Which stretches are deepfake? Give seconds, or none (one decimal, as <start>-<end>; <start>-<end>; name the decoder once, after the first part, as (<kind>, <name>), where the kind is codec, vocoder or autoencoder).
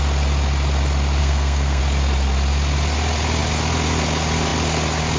1.2-1.8 (codec, SNAC)